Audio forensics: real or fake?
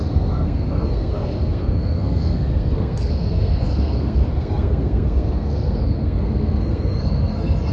fake